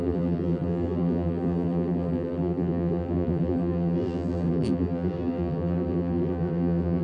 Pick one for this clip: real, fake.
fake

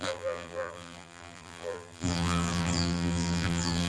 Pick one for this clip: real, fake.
fake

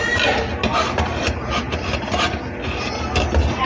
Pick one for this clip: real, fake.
real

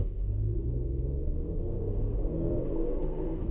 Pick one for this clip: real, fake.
fake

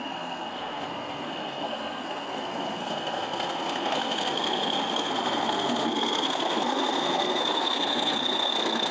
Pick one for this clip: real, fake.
fake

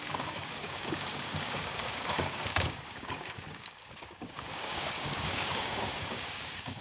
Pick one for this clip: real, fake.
fake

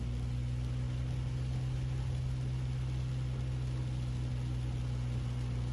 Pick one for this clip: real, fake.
real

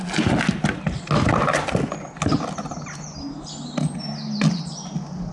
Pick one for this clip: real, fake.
real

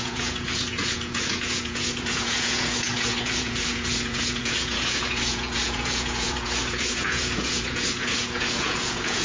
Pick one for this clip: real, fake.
fake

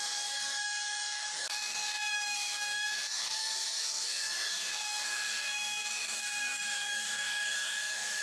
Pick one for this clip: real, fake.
fake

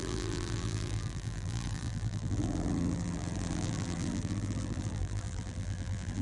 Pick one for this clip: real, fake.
fake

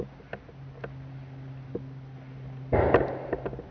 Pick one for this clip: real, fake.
real